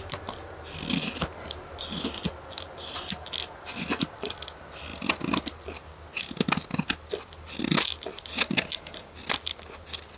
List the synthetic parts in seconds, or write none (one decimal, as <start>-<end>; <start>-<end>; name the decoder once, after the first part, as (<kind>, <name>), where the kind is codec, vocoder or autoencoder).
none